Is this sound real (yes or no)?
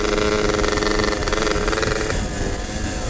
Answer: yes